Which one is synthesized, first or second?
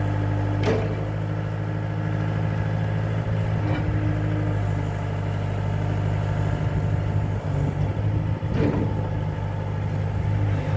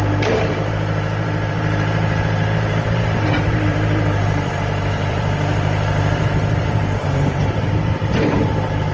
second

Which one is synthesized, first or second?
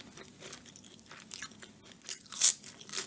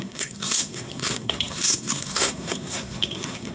second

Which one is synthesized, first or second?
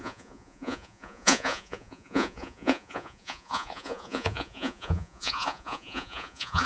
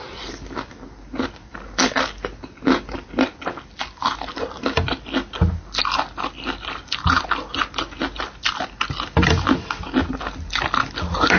first